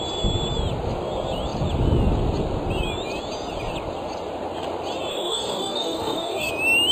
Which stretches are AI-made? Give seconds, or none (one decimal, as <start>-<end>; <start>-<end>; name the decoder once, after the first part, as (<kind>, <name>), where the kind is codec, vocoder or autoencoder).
5.1-6.5 (codec, DAC)